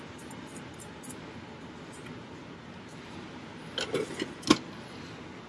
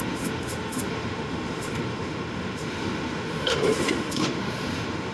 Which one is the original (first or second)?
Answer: first